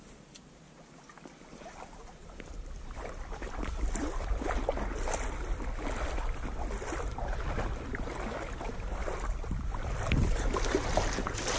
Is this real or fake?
real